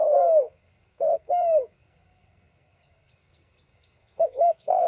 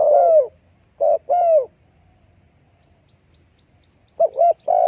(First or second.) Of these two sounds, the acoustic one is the second